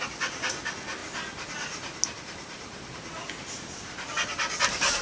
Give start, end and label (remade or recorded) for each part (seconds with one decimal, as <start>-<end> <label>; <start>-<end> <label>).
0.0-5.0 recorded

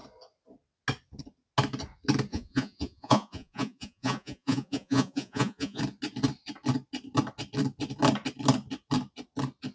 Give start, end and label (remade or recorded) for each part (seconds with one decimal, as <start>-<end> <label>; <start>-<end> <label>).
0.0-2.3 recorded; 2.3-5.8 remade; 5.8-9.7 recorded

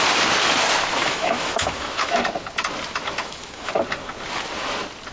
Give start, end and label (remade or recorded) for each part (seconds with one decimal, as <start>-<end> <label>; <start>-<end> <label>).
0.0-1.0 recorded; 1.0-2.2 remade; 2.2-3.2 recorded; 3.2-3.7 remade; 3.7-5.1 recorded

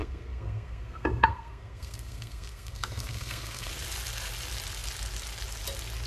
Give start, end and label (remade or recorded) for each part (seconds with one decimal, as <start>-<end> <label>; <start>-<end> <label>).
0.0-3.7 remade; 3.7-6.1 recorded

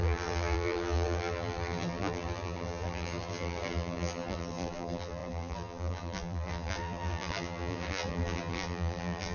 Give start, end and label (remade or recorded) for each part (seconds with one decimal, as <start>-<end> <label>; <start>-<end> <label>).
0.0-9.3 remade

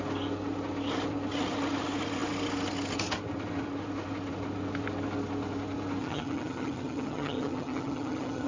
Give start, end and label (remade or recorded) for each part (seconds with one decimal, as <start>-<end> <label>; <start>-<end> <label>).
0.0-6.0 recorded; 6.0-8.5 remade

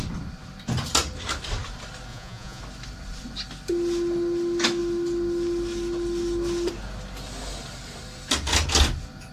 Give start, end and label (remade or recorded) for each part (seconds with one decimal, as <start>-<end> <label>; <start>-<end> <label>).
0.0-2.1 recorded; 2.1-2.6 remade; 2.6-9.3 recorded

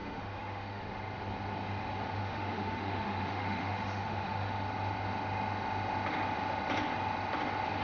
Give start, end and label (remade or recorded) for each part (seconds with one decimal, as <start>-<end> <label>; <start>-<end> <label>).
0.0-0.8 remade; 0.8-2.2 recorded; 2.2-4.5 remade; 4.5-7.8 recorded